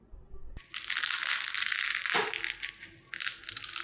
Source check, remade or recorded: recorded